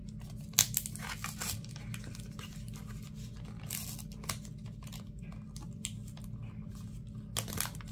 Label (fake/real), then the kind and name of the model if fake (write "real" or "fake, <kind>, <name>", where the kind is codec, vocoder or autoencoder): real